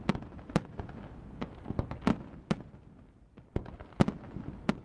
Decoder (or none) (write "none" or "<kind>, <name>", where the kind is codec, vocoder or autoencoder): none